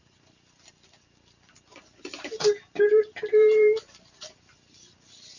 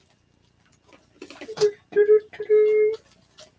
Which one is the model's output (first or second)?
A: first